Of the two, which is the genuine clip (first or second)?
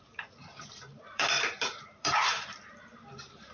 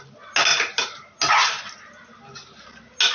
second